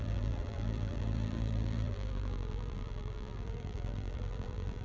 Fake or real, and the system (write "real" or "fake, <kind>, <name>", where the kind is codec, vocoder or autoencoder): fake, vocoder, BigVGAN v2